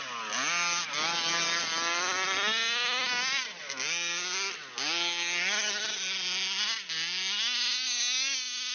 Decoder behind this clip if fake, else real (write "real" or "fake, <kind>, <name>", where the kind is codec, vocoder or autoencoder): real